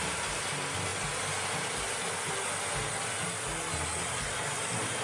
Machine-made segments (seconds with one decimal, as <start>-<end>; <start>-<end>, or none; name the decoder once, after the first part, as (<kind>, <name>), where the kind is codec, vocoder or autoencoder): none